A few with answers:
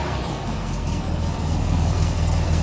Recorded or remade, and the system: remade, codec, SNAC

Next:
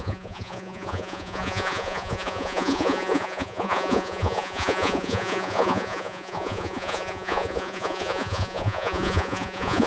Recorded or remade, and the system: remade, vocoder, Vocos